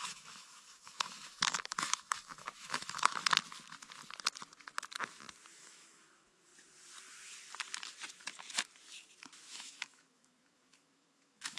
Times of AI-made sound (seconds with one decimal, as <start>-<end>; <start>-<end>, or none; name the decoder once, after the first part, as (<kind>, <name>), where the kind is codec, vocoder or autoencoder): 0.0-3.2 (autoencoder, DAC-VAE); 5.5-6.5; 9.5-11.6